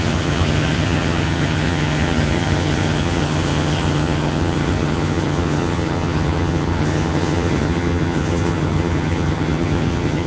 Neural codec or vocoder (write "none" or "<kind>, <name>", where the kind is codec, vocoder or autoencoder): vocoder, HiFi-GAN